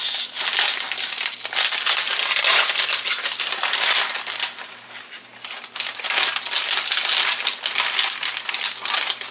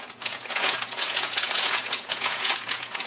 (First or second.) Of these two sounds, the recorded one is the first